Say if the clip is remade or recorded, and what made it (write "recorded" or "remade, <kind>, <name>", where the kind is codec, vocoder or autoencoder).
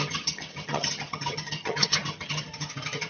remade, vocoder, HiFi-GAN